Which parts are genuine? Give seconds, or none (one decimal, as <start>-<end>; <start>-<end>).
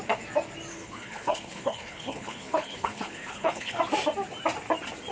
0.0-0.7; 3.8-5.1